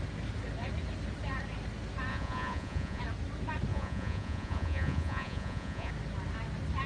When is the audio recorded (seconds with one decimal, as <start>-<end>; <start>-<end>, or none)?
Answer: 0.0-2.1; 3.0-3.7; 5.9-6.9